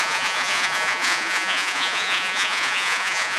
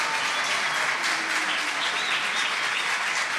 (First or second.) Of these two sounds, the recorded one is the second